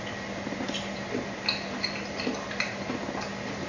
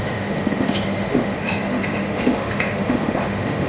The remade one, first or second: second